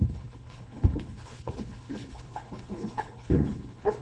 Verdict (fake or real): fake